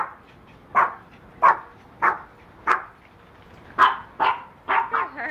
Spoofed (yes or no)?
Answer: no